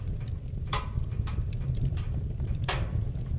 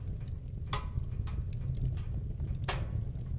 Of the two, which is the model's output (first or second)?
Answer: first